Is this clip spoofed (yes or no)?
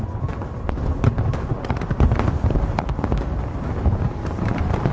no